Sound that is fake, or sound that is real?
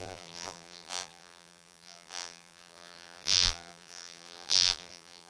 fake